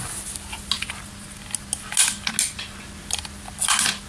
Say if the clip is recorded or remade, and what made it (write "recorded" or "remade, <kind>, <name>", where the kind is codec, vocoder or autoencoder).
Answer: recorded